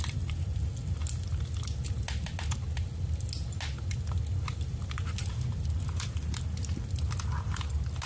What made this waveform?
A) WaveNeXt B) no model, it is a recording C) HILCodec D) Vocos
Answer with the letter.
B